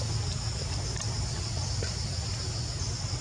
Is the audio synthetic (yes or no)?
no